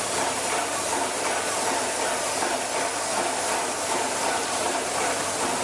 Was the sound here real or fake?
real